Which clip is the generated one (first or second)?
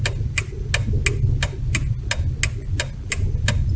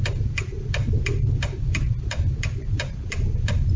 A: second